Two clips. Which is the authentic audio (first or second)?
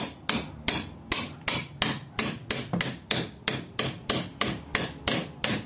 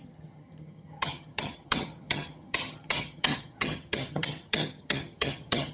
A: first